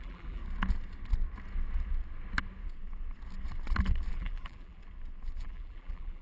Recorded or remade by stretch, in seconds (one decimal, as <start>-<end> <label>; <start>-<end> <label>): 0.0-0.4 remade; 0.4-4.1 recorded; 4.1-4.8 remade; 4.8-5.4 recorded; 5.4-6.2 remade